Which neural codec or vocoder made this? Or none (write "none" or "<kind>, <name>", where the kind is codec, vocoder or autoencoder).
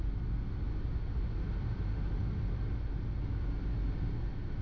none